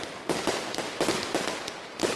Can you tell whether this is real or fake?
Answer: real